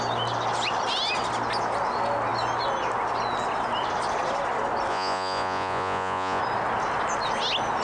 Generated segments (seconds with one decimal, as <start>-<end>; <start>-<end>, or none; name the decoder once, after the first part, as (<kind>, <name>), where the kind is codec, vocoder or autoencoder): 4.9-6.4 (vocoder, Vocos)